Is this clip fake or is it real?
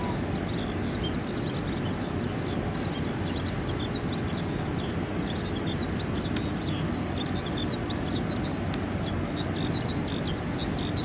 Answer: real